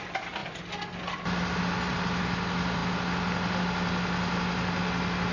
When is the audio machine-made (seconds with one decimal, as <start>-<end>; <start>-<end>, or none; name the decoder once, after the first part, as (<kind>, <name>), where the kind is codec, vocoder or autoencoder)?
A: none